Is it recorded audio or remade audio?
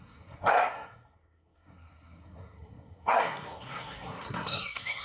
remade